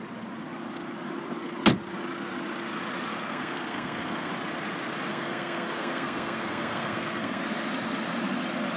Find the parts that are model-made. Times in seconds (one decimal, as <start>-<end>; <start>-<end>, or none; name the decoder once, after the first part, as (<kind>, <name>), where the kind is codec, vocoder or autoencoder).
3.1-4.3 (codec, SNAC); 5.1-7.4